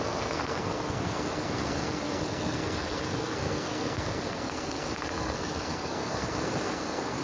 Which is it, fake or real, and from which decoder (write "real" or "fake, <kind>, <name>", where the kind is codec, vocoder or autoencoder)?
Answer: fake, codec, SNAC